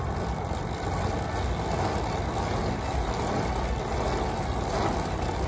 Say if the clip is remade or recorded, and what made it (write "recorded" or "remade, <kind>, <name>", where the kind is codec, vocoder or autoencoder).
recorded